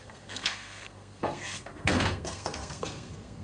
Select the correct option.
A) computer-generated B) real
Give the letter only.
A